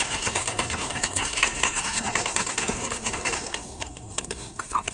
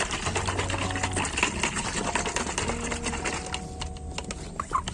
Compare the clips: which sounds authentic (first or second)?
second